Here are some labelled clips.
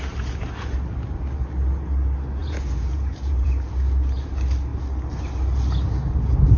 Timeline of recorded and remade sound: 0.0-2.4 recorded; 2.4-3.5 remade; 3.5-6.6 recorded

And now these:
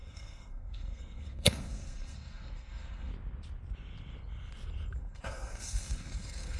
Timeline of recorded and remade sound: 0.0-3.1 remade; 3.1-5.0 recorded; 5.0-6.6 remade